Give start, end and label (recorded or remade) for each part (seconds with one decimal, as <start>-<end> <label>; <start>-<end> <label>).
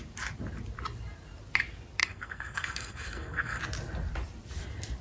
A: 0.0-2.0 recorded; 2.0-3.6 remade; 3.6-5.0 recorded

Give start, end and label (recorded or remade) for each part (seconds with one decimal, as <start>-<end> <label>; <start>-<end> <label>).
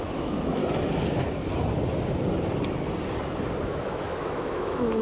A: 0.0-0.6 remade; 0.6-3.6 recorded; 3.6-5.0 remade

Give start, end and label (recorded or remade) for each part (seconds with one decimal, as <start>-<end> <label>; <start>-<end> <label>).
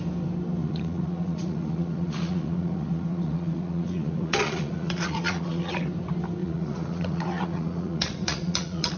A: 0.0-0.6 recorded; 0.6-5.8 remade; 5.8-6.4 recorded; 6.4-9.0 remade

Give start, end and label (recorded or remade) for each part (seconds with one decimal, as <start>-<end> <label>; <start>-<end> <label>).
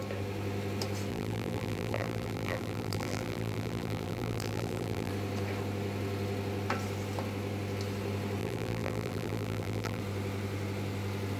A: 0.0-1.1 recorded; 1.1-5.1 remade; 5.1-8.4 recorded; 8.4-10.0 remade; 10.0-11.4 recorded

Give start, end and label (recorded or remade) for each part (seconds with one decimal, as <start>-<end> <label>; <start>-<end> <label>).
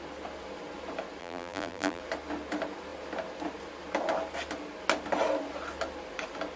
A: 0.0-1.2 recorded; 1.2-2.0 remade; 2.0-6.6 recorded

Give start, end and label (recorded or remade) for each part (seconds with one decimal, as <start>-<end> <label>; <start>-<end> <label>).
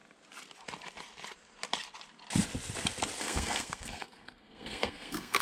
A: 0.0-3.2 recorded; 3.2-5.4 remade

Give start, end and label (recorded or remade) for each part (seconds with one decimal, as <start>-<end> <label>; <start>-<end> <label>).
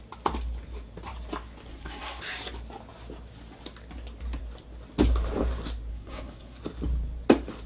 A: 0.0-1.7 recorded; 1.7-2.2 remade; 2.2-5.9 recorded; 5.9-6.6 remade; 6.6-7.7 recorded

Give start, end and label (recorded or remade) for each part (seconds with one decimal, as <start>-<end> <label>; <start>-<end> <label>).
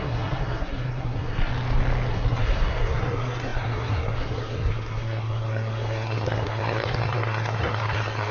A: 0.0-1.5 remade; 1.5-2.1 recorded; 2.1-8.3 remade